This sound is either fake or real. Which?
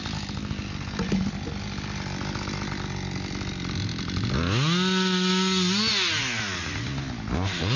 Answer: real